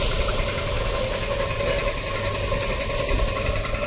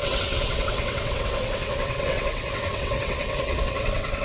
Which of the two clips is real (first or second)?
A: first